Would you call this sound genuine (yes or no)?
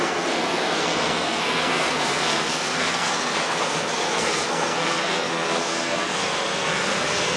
no